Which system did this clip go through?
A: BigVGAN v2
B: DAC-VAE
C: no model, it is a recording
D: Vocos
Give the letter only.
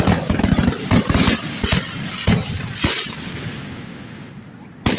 C